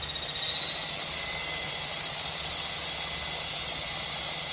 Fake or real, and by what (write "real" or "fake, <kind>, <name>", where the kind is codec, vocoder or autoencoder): real